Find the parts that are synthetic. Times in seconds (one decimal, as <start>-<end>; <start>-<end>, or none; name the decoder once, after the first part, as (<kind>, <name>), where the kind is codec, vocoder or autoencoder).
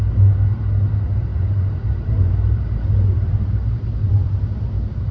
1.3-4.4 (vocoder, BigVGAN v2)